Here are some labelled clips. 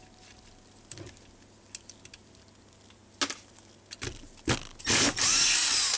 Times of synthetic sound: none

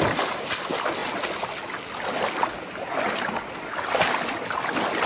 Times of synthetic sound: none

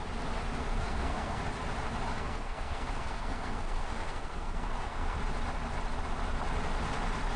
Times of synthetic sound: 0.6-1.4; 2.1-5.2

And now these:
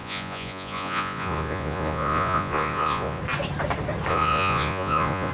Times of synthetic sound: 0.0-3.2; 4.1-5.3